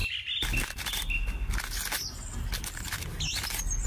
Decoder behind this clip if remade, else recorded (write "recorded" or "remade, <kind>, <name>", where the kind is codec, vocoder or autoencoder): recorded